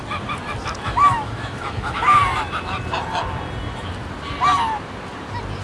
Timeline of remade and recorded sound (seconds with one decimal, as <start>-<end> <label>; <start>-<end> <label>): 0.0-0.8 recorded; 0.8-2.2 remade; 2.2-5.6 recorded